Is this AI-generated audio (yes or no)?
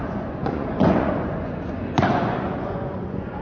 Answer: yes